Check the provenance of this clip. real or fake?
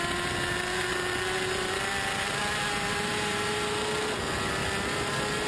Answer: real